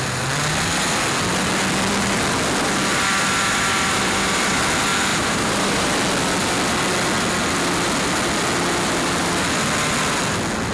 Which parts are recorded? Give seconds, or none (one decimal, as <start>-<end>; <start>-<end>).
0.0-2.9; 4.6-5.1; 5.9-10.7